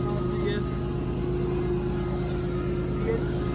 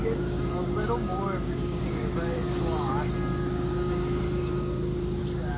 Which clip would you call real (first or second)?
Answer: first